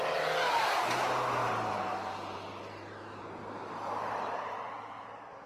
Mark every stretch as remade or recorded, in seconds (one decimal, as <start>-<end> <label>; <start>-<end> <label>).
0.0-1.4 recorded; 1.4-4.7 remade; 4.7-5.5 recorded